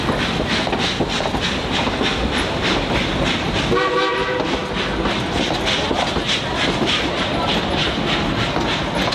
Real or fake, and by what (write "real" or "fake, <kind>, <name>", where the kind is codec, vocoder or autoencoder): real